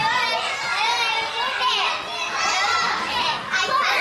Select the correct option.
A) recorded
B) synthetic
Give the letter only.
A